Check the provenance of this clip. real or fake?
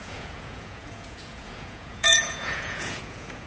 fake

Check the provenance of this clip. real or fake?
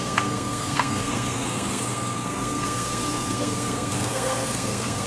fake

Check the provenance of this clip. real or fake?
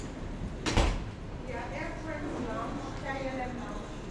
real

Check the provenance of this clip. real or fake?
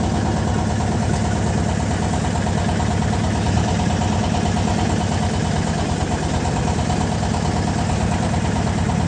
real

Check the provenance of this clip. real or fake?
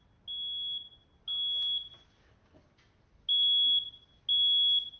real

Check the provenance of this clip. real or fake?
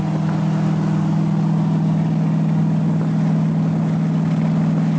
real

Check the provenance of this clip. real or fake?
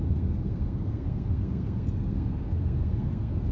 fake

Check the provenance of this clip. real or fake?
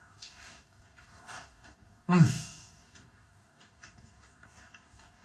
fake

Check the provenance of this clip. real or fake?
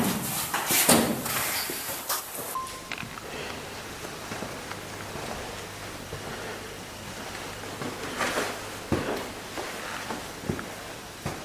real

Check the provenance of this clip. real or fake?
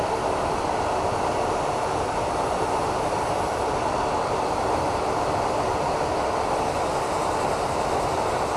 real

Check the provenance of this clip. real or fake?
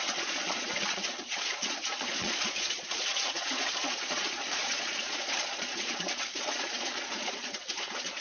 fake